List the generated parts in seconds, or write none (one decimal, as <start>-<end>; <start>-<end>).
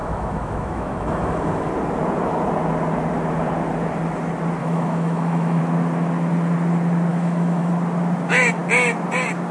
0.0-1.7; 4.6-5.6; 7.1-7.7